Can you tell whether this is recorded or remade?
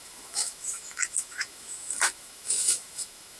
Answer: remade